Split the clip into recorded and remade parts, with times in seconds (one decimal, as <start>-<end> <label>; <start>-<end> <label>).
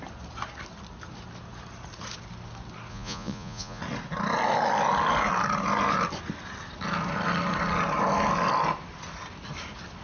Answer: 0.0-2.9 recorded; 2.9-3.8 remade; 3.8-10.0 recorded